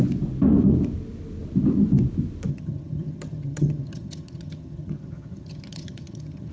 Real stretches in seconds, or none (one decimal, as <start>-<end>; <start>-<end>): 0.0-2.5